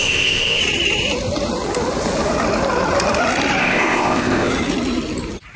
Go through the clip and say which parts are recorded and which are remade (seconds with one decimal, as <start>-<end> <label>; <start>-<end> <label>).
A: 0.0-0.6 remade; 0.6-3.6 recorded; 3.6-4.5 remade; 4.5-5.6 recorded